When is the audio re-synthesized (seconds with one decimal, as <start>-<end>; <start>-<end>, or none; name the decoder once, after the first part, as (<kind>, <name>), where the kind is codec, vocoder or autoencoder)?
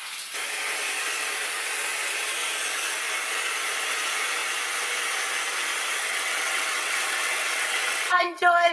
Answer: 6.1-8.7 (vocoder, WaveNeXt)